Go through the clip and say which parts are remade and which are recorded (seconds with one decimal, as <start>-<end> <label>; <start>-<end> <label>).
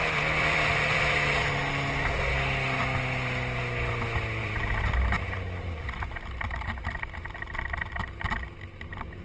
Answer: 0.0-0.4 recorded; 0.4-1.0 remade; 1.0-4.4 recorded; 4.4-7.9 remade; 7.9-9.2 recorded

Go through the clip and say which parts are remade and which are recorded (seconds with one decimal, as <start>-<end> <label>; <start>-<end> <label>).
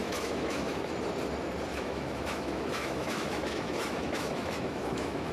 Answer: 0.0-0.9 remade; 0.9-1.7 recorded; 1.7-5.3 remade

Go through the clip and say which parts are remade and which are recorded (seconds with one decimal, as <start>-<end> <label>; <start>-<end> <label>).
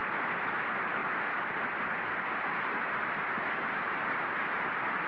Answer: 0.0-5.1 recorded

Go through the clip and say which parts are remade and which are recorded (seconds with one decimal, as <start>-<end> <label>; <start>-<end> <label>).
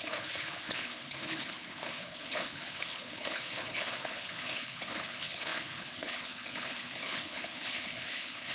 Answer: 0.0-8.5 remade